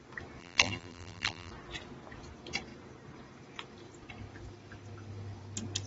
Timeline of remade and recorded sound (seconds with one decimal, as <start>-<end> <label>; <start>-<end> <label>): 0.0-0.4 recorded; 0.4-1.5 remade; 1.5-5.9 recorded